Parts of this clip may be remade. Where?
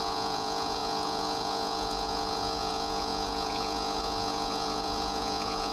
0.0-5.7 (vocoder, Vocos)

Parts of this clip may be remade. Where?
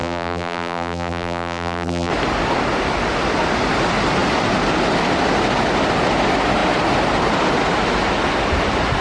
0.0-2.1 (vocoder, BigVGAN v2)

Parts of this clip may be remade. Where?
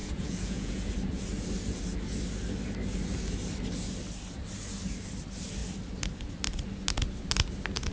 0.0-0.9 (vocoder, Vocos)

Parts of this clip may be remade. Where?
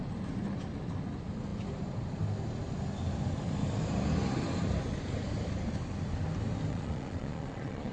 6.7-7.9 (vocoder, Vocos)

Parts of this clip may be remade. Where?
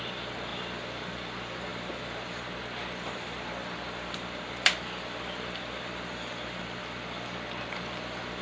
1.7-6.6 (vocoder, BigVGAN v2)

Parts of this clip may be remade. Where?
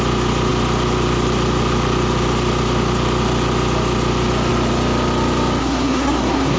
5.6-6.6 (codec, SNAC)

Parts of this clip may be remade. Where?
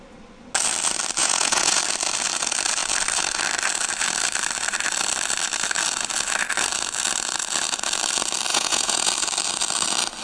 1.2-1.8 (vocoder, Vocos); 8.5-9.1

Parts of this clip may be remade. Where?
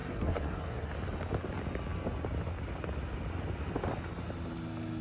0.0-0.9 (codec, SNAC)